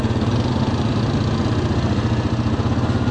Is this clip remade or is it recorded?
recorded